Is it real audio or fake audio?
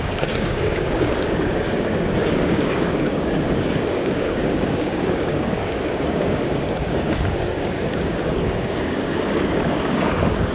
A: fake